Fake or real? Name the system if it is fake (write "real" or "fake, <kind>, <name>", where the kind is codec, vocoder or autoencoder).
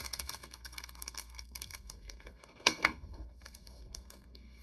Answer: fake, codec, SNAC